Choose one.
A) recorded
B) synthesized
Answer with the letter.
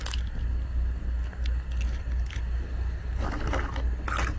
A